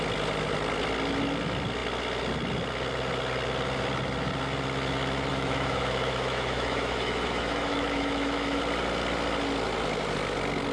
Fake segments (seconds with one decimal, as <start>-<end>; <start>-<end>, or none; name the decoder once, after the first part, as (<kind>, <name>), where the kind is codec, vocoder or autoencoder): 5.3-8.6 (autoencoder, DAC-VAE)